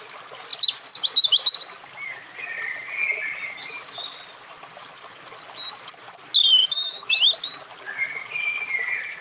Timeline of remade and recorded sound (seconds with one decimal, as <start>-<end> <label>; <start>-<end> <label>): 0.0-6.6 recorded; 6.6-7.1 remade; 7.1-9.2 recorded